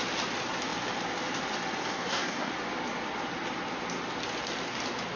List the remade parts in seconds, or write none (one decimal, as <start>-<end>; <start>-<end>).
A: 1.8-2.5